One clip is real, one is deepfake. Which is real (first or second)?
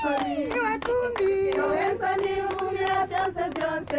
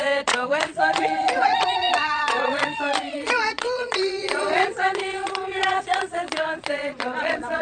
first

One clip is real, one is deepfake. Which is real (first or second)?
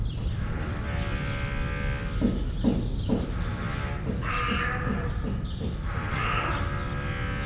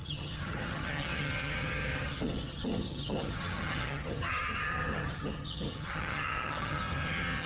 first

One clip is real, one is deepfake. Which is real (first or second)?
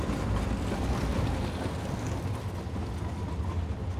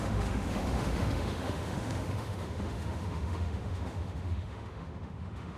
first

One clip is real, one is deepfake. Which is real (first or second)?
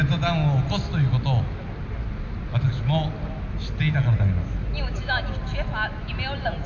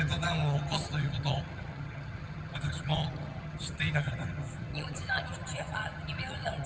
first